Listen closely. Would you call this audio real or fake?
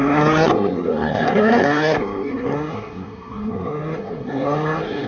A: fake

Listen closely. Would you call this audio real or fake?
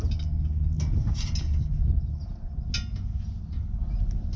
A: real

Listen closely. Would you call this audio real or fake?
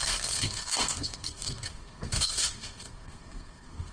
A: fake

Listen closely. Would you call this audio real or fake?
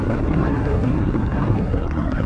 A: fake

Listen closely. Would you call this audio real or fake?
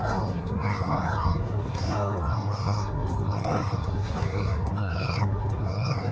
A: fake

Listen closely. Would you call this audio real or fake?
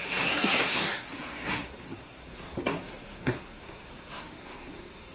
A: fake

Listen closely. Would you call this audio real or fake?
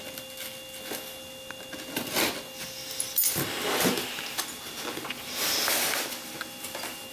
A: real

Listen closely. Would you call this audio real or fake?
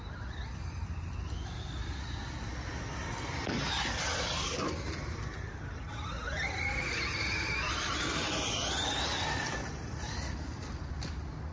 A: real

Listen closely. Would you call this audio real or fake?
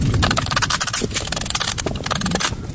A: real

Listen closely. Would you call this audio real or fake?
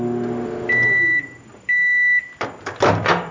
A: real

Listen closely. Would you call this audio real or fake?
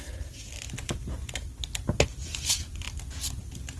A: real